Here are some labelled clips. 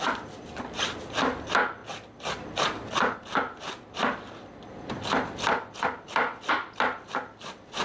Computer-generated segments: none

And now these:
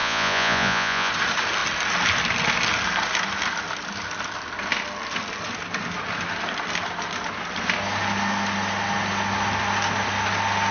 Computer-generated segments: 0.0-1.1 (vocoder, Vocos)

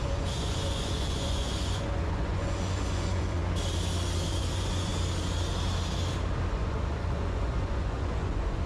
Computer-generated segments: 0.0-3.4 (vocoder, Vocos); 4.3-4.9; 6.5-8.7

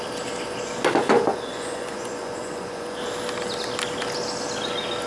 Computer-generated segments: 1.3-3.0 (vocoder, Vocos)

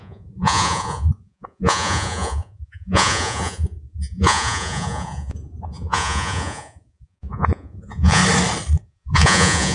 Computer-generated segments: 0.0-8.2 (vocoder, Vocos); 8.8-9.7

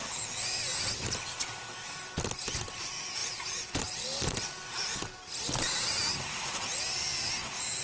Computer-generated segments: none

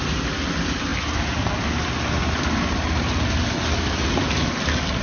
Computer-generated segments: none